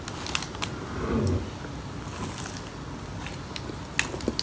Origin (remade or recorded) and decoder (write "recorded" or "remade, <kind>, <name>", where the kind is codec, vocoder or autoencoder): recorded